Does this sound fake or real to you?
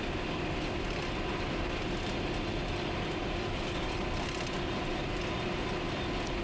real